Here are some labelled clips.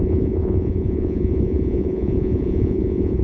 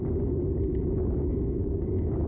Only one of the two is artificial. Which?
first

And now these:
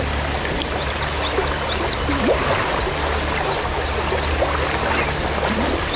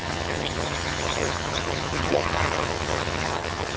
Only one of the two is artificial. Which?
second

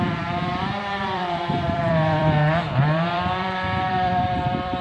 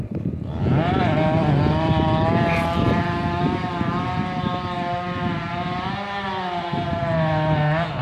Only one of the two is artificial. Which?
first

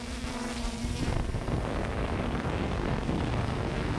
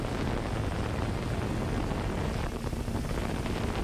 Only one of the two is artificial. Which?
first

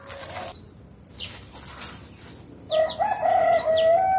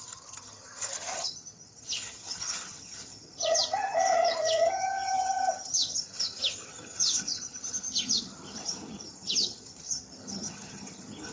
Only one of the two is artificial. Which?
second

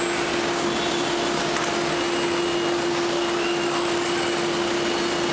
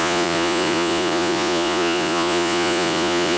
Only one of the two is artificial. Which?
second